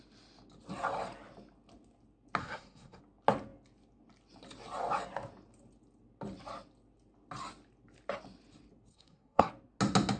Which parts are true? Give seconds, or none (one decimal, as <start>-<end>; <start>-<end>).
0.0-2.4; 3.0-8.9; 9.5-10.2